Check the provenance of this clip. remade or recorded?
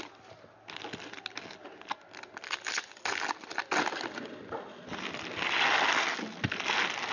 recorded